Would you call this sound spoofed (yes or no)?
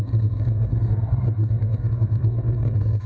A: yes